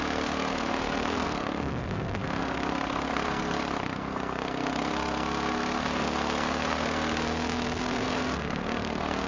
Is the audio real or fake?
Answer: fake